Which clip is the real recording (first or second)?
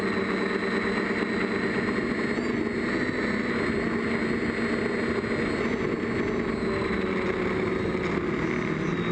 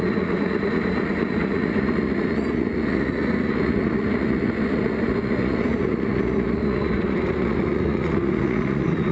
first